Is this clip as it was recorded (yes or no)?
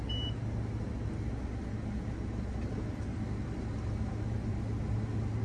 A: yes